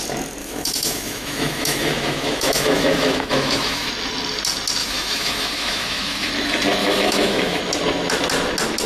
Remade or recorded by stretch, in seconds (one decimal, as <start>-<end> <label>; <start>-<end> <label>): 0.0-0.4 recorded; 0.4-3.9 remade; 3.9-4.8 recorded; 4.8-6.3 remade; 6.3-6.8 recorded; 6.8-7.6 remade; 7.6-8.9 recorded